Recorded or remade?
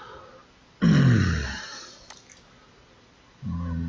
recorded